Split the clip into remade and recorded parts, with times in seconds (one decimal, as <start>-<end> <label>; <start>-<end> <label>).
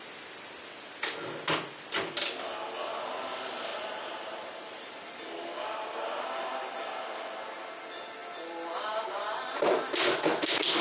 0.0-3.7 recorded; 3.7-4.9 remade; 4.9-10.8 recorded